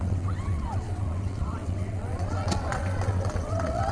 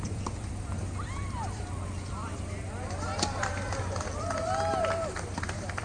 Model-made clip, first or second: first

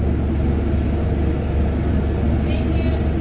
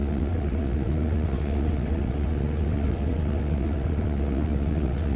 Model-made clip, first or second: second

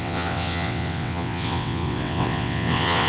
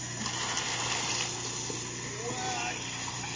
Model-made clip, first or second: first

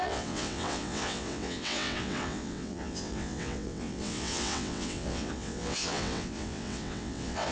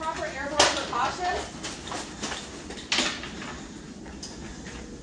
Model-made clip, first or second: first